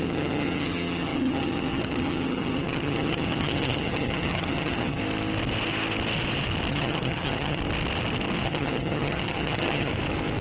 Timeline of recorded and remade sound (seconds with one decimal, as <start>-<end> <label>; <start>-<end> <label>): 0.0-5.0 remade; 5.0-6.7 recorded; 6.7-7.6 remade; 7.6-8.4 recorded; 8.4-9.9 remade; 9.9-10.4 recorded

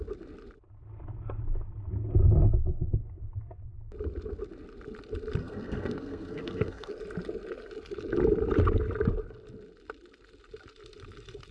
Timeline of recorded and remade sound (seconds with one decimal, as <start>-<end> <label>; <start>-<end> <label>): 0.0-5.4 recorded; 5.4-6.9 remade; 6.9-11.5 recorded

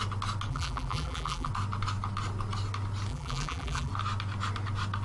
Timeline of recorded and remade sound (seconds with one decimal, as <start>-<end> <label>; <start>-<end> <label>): 0.0-0.5 recorded; 0.5-1.5 remade; 1.5-3.1 recorded; 3.1-3.9 remade; 3.9-5.0 recorded